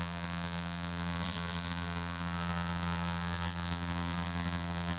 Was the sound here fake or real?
fake